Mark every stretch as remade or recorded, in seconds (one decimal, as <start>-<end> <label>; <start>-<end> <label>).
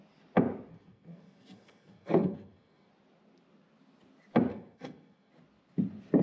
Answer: 0.0-0.7 recorded; 0.7-2.9 remade; 2.9-4.5 recorded; 4.5-5.3 remade; 5.3-6.2 recorded